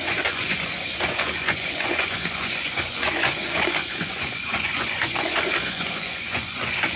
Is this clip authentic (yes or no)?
no